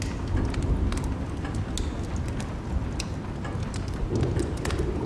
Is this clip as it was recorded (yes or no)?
yes